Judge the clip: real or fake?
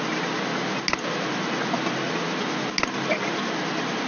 real